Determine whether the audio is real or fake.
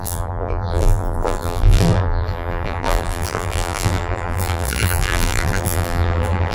fake